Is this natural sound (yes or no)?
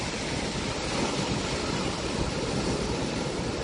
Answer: yes